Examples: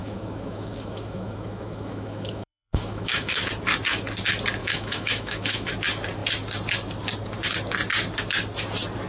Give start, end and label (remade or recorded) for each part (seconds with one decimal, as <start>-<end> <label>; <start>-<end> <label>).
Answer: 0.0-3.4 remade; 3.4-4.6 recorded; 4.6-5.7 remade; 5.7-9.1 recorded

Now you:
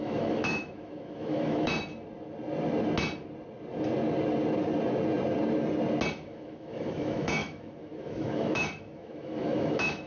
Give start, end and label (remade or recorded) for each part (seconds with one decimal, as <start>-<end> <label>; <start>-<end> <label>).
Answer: 0.0-1.7 remade; 1.7-6.1 recorded; 6.1-10.1 remade

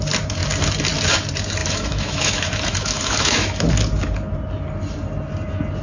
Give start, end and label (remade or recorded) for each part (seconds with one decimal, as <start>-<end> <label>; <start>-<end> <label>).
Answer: 0.0-1.6 recorded; 1.6-3.7 remade; 3.7-5.8 recorded